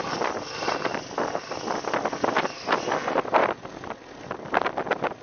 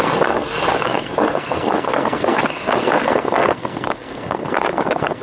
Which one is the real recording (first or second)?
first